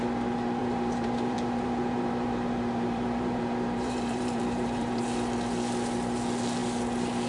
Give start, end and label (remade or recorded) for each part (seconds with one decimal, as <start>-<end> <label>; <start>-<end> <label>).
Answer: 0.0-0.6 recorded; 0.6-5.0 remade; 5.0-7.3 recorded